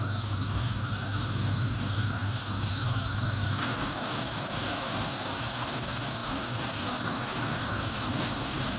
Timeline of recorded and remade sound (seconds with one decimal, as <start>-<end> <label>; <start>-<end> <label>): 0.0-8.8 remade